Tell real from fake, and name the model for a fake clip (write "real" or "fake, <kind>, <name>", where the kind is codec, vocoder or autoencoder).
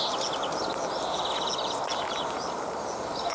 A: real